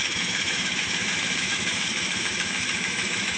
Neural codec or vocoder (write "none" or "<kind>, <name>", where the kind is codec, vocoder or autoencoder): autoencoder, DAC-VAE